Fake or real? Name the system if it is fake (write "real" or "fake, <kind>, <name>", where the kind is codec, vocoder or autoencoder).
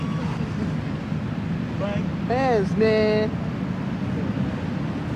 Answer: real